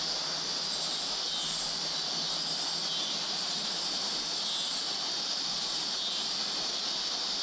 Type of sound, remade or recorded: recorded